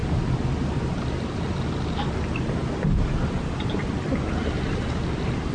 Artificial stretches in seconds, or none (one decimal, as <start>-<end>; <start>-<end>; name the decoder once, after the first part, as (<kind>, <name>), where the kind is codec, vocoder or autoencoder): none